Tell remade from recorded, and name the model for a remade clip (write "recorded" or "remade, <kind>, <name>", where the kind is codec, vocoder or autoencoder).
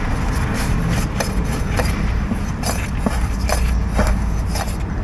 recorded